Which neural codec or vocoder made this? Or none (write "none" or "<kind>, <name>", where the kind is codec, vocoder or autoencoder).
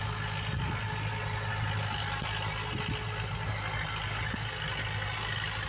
none